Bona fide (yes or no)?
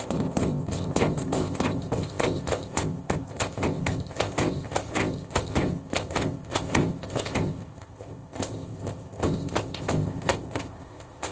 no